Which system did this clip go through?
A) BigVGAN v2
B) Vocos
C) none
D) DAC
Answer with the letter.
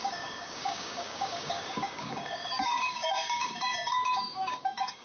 D